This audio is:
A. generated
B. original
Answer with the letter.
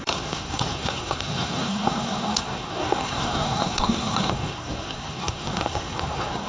A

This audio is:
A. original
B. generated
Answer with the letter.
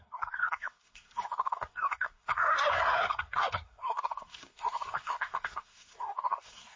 B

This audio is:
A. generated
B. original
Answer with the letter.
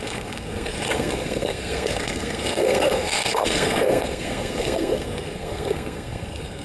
A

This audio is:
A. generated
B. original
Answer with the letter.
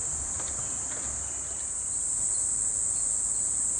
B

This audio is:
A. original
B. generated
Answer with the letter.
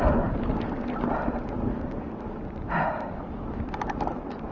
A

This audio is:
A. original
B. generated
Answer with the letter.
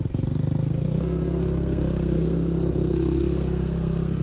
B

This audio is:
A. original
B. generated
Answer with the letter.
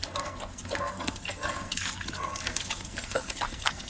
B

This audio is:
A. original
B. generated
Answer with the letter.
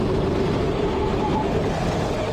A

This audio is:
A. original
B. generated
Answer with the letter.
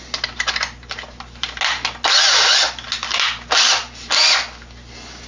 A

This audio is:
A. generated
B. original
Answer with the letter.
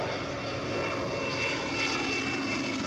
B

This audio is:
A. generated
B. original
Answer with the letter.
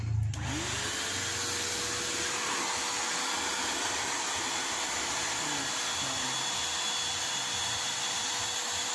B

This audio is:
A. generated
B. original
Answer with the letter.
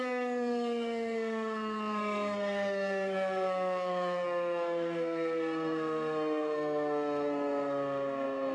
A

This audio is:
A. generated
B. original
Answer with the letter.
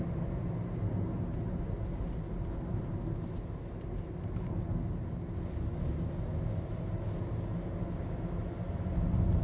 B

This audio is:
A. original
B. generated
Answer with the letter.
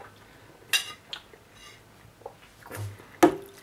A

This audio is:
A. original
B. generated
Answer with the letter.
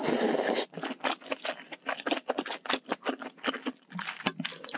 A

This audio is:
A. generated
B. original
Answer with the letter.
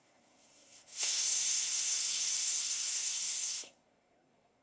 A